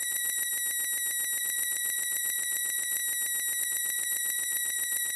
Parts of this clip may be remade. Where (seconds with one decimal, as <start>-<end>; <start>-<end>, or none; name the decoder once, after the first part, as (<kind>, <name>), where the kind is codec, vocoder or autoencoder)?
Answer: 0.0-0.5 (vocoder, Vocos); 1.4-3.0; 3.6-5.2